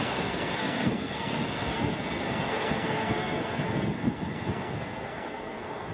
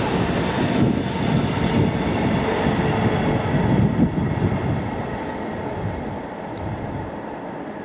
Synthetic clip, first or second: first